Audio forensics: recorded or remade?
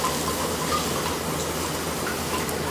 recorded